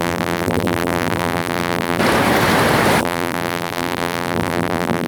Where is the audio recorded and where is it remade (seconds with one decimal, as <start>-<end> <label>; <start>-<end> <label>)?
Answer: 0.0-2.0 remade; 2.0-3.0 recorded; 3.0-5.1 remade

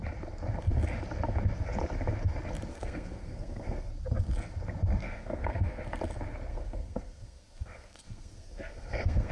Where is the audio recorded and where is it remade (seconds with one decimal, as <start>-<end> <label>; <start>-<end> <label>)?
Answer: 0.0-2.7 recorded; 2.7-3.9 remade; 3.9-5.0 recorded; 5.0-5.8 remade; 5.8-6.5 recorded; 6.5-9.3 remade